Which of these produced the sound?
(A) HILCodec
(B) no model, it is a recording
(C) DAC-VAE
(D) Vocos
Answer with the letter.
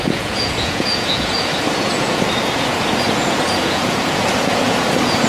D